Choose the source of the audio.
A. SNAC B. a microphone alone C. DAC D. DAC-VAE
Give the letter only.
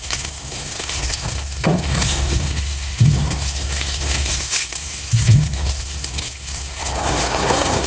A